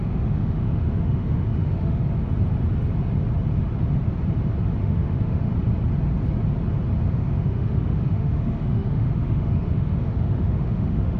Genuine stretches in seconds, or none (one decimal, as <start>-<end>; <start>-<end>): 2.0-4.8; 5.5-7.1

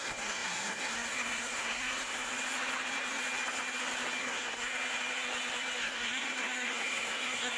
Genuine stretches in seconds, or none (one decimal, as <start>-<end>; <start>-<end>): 2.3-4.2; 4.7-5.8